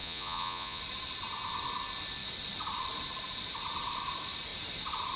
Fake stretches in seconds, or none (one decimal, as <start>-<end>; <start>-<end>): 0.0-0.8